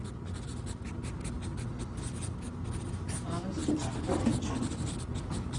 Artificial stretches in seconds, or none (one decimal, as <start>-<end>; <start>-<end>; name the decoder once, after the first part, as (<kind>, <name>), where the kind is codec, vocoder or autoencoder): none